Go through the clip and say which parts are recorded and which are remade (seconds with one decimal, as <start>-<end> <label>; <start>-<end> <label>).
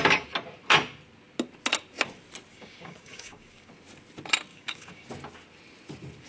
0.0-2.5 recorded; 2.5-3.7 remade; 3.7-4.5 recorded; 4.5-5.1 remade; 5.1-6.3 recorded